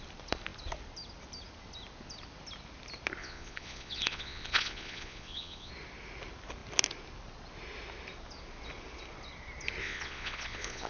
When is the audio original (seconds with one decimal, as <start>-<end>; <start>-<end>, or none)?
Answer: 0.0-3.2; 5.7-9.8